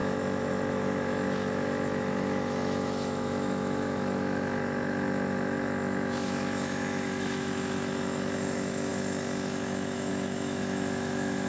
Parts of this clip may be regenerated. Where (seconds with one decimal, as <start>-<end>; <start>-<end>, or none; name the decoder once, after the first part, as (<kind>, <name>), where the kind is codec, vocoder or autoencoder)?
0.0-11.5 (autoencoder, DAC-VAE)